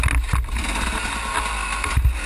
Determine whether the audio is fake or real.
real